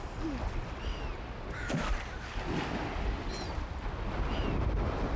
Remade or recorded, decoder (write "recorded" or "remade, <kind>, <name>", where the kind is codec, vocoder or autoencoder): recorded